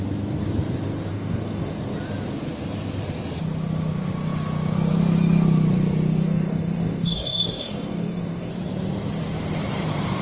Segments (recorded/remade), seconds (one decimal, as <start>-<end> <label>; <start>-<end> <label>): 0.0-1.1 recorded; 1.1-1.7 remade; 1.7-6.2 recorded; 6.2-8.5 remade; 8.5-10.2 recorded

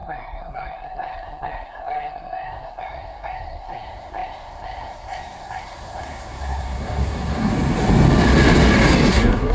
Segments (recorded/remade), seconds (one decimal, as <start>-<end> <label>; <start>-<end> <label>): 0.0-7.5 remade; 7.5-9.1 recorded; 9.1-9.5 remade

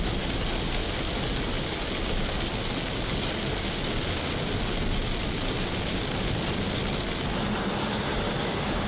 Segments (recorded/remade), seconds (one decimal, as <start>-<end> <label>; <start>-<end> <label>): 0.0-8.9 recorded